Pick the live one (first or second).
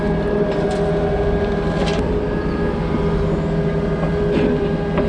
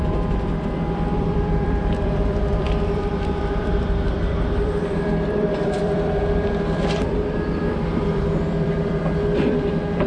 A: first